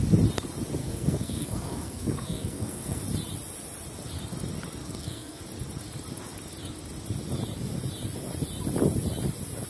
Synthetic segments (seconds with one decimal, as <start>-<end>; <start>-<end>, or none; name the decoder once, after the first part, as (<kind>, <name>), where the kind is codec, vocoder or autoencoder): 0.8-3.0 (codec, SNAC); 4.8-5.4